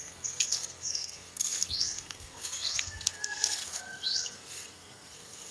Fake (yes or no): yes